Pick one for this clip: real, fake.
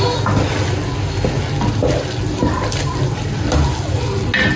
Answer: real